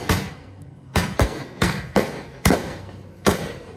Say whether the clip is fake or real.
fake